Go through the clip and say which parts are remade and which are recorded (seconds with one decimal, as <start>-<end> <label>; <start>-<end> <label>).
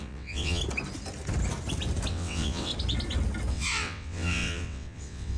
0.0-0.6 remade; 0.6-2.1 recorded; 2.1-2.7 remade; 2.7-3.5 recorded; 3.5-5.4 remade